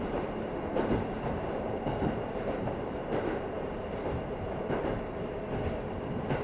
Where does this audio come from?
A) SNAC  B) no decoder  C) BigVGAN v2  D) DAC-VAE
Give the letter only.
C